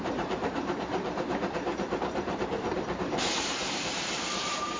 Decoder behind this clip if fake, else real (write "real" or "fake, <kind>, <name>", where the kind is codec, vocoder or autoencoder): fake, vocoder, BigVGAN v2